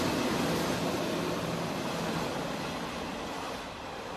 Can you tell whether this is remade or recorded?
recorded